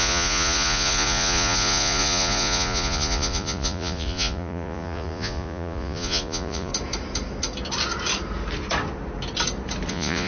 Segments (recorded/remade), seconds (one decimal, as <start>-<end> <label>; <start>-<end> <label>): 0.0-6.7 remade; 6.7-9.9 recorded; 9.9-10.3 remade